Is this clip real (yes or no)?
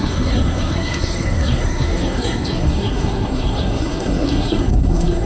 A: no